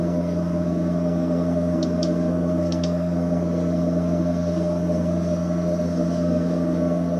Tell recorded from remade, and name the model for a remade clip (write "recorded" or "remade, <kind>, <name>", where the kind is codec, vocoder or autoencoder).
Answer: remade, codec, SNAC